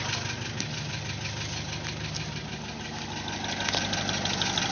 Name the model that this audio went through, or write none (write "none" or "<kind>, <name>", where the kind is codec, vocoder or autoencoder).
none